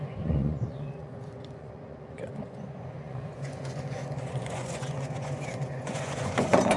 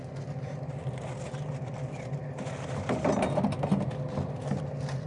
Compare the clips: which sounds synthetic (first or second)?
first